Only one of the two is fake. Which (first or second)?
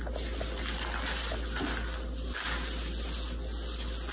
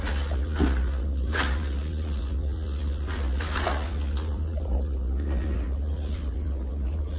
second